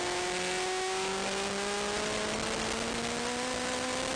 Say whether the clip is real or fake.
real